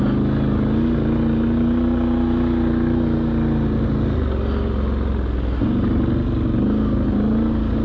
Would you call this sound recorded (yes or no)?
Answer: yes